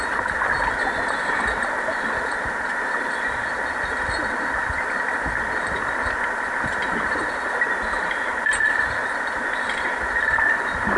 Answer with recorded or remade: recorded